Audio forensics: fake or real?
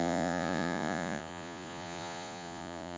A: fake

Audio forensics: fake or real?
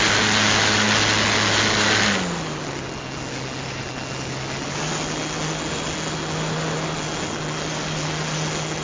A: real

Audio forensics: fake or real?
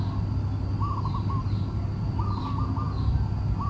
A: real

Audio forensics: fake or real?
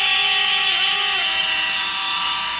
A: real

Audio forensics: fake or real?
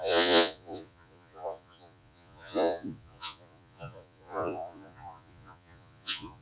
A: fake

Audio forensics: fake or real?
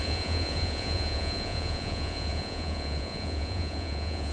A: fake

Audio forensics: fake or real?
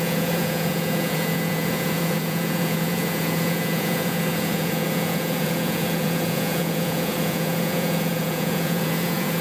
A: fake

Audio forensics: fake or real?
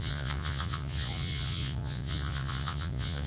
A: fake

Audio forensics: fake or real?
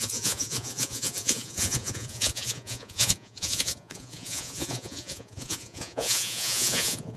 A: fake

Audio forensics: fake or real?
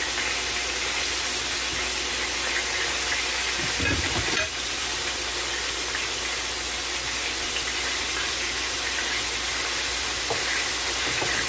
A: real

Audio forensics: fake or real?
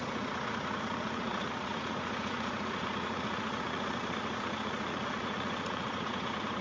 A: fake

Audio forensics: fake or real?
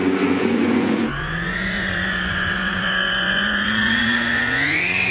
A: fake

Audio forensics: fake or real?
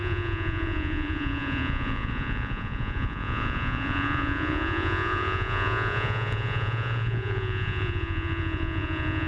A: fake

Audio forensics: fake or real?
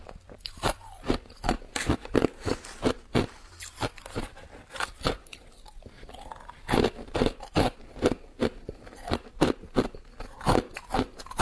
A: real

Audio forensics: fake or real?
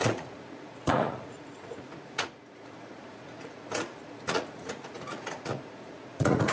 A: fake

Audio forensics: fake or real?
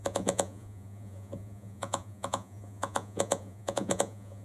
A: fake